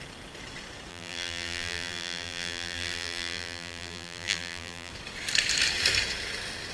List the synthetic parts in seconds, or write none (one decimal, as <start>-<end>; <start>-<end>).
0.9-4.9